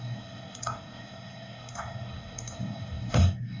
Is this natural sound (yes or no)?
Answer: no